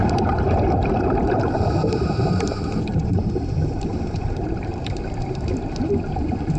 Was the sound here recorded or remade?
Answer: remade